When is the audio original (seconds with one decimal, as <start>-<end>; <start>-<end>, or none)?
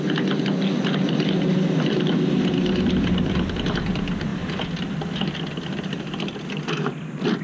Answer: 0.0-7.4